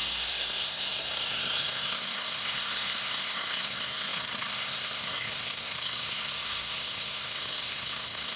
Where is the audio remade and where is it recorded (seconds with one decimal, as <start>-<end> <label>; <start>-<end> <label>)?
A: 0.0-8.4 remade